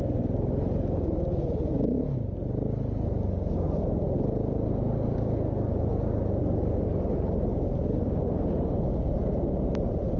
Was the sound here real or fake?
real